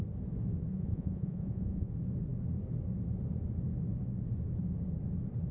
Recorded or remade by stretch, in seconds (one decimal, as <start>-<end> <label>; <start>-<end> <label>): 0.0-0.7 recorded; 0.7-1.9 remade; 1.9-5.5 recorded